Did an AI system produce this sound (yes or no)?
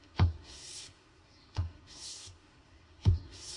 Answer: yes